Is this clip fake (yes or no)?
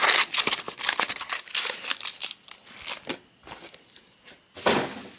no